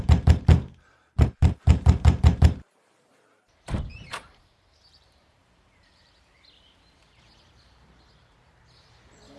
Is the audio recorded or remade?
remade